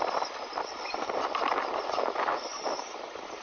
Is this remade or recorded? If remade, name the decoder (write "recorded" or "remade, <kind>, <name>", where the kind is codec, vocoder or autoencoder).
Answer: recorded